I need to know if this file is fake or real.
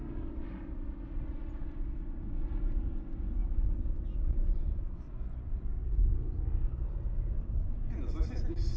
real